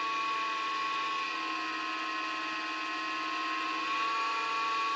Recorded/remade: recorded